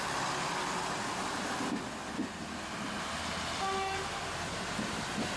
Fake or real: real